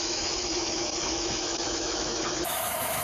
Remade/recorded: remade